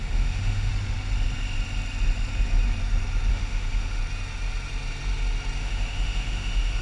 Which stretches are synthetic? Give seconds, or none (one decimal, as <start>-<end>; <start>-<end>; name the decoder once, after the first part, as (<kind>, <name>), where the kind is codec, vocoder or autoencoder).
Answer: 0.0-0.7 (autoencoder, DAC-VAE); 3.3-4.0; 5.6-6.8